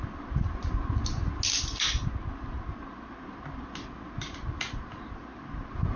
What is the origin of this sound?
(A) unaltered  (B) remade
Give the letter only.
A